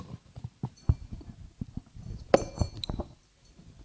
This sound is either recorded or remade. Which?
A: recorded